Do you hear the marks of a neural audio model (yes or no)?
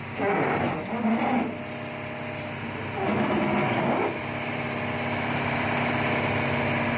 no